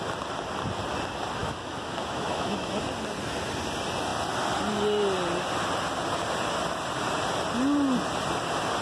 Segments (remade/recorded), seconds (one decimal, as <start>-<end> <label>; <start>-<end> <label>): 0.0-1.4 recorded; 1.4-2.7 remade; 2.7-8.8 recorded